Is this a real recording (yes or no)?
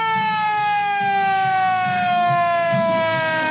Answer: no